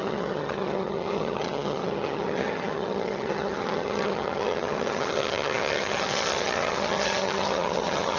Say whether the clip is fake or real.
fake